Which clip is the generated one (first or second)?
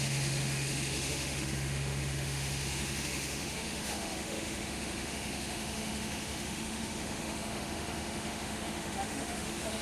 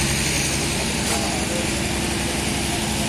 first